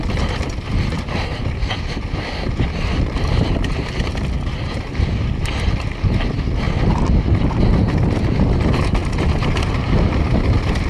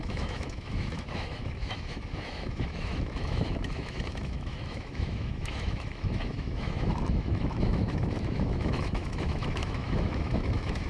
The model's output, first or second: second